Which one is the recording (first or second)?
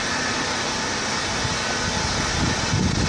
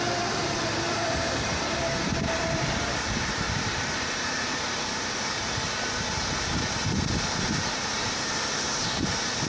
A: first